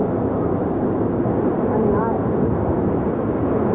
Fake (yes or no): no